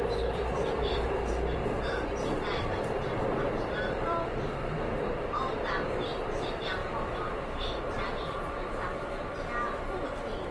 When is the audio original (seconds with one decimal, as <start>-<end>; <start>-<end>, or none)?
none